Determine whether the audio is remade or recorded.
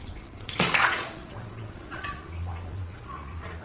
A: remade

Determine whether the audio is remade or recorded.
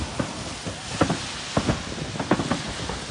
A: recorded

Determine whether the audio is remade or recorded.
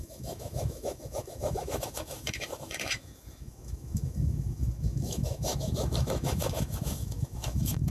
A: remade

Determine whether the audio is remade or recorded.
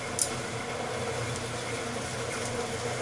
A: recorded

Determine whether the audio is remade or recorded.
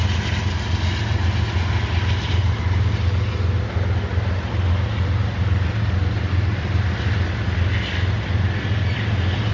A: recorded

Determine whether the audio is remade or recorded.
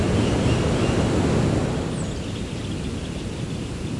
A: recorded